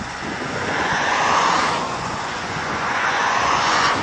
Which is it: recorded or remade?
remade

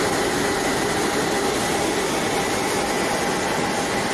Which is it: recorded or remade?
recorded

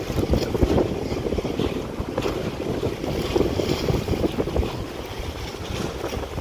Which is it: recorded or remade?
recorded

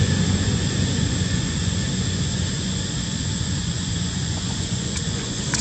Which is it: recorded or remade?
remade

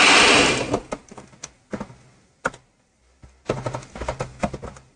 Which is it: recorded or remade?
recorded